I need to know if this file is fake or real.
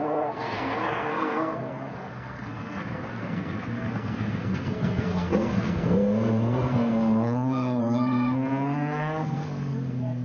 fake